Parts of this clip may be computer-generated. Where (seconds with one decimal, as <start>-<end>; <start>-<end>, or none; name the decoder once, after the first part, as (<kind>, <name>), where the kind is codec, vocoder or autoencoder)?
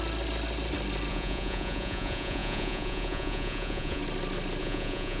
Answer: 1.1-4.0 (vocoder, Vocos); 4.6-5.2